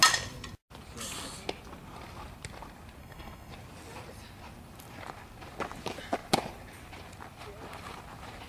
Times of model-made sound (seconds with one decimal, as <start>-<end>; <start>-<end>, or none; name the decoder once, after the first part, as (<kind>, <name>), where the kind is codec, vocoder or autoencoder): 3.0-3.5 (codec, SNAC)